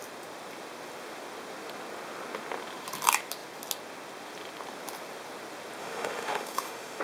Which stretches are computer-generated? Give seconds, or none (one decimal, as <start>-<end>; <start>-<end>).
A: 5.8-7.0